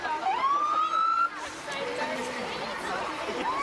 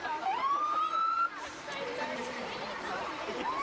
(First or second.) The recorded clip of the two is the first